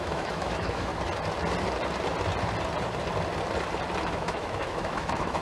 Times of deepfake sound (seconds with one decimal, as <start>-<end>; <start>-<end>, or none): 0.0-0.9; 4.1-5.4